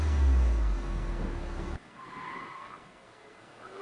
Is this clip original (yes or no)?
no